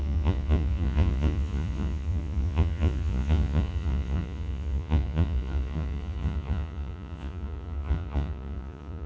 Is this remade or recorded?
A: remade